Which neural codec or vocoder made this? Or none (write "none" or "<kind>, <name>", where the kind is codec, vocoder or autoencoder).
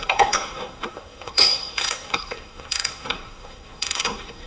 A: codec, SNAC